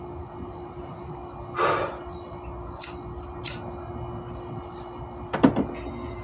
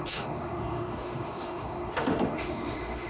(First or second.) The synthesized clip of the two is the second